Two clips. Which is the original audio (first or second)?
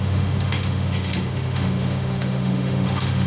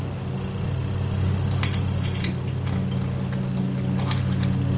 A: second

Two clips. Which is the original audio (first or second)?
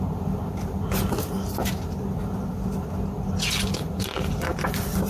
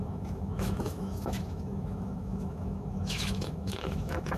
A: first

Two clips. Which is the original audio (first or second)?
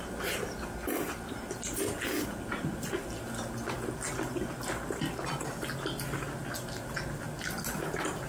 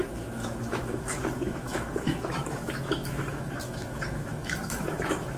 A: first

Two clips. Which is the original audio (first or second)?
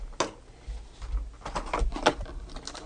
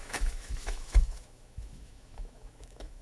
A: first